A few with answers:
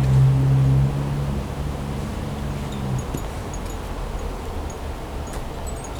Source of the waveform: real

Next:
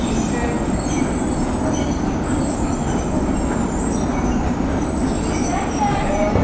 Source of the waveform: real